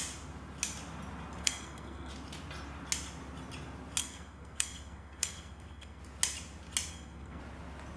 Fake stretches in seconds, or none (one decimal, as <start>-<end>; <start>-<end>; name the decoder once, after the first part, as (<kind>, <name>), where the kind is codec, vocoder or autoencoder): 1.4-2.1 (codec, SNAC); 4.0-6.0; 6.9-7.4

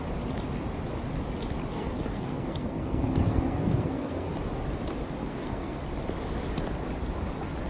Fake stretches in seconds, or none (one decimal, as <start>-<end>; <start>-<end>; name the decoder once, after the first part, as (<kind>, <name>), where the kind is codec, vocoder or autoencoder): 1.7-4.3 (codec, SNAC); 5.2-5.8

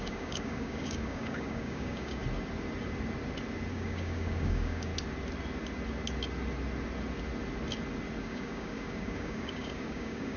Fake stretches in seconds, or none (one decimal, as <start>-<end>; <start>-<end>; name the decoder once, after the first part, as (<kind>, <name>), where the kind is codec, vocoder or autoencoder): 0.0-2.2 (codec, DAC); 3.7-4.9; 8.2-10.4

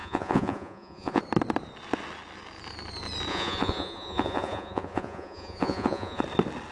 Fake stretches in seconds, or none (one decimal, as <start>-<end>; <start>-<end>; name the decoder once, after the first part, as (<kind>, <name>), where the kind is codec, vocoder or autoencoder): 0.0-1.2 (vocoder, Vocos); 3.3-6.2

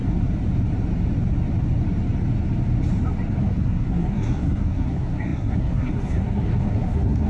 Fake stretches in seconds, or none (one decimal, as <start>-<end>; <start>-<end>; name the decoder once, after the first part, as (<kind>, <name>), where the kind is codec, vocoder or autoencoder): 3.4-7.3 (codec, SNAC)

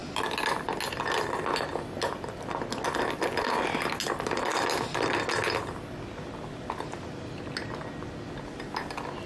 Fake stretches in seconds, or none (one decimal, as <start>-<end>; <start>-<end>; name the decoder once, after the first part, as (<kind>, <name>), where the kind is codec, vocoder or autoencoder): none